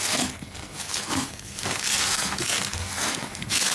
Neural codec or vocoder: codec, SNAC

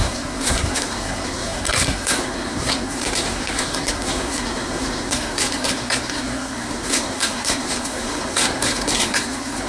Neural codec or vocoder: codec, SNAC